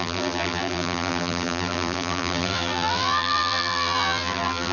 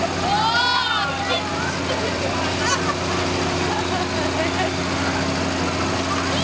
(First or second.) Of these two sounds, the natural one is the second